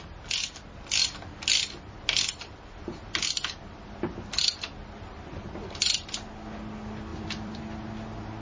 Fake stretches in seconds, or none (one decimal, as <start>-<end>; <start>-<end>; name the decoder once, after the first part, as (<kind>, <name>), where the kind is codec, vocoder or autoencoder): 7.1-7.6 (vocoder, BigVGAN v2)